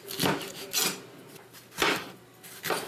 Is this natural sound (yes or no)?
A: yes